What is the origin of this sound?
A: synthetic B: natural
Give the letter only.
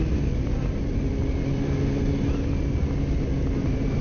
B